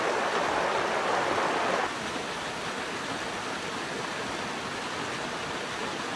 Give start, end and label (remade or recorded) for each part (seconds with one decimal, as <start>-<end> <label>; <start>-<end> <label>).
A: 0.0-6.2 recorded